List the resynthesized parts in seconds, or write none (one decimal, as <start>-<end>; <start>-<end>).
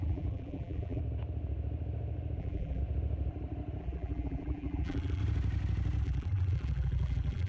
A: 0.0-1.0; 2.4-2.8; 3.8-5.2; 6.0-7.5